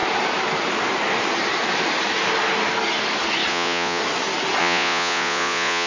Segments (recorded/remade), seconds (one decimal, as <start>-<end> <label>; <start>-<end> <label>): 0.0-3.5 recorded; 3.5-4.0 remade; 4.0-4.6 recorded; 4.6-5.9 remade